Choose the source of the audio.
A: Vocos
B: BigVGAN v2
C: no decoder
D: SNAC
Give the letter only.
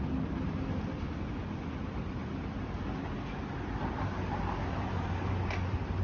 C